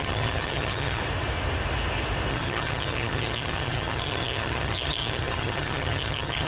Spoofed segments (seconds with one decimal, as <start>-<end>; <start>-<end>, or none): 0.0-1.0; 2.3-6.5